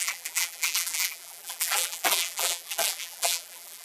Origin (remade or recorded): remade